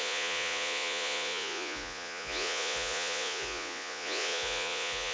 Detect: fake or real fake